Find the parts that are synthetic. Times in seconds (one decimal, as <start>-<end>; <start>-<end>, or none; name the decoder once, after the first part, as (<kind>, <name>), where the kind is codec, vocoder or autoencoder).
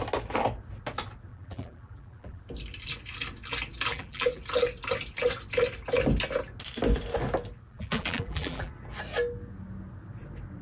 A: 1.3-2.4 (vocoder, BigVGAN v2); 3.9-4.4; 7.7-8.7